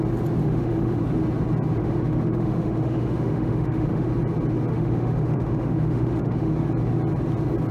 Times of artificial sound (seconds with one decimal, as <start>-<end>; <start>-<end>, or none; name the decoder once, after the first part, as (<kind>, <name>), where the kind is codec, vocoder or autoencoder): 0.4-1.0 (autoencoder, DAC-VAE); 1.8-4.0; 4.7-6.5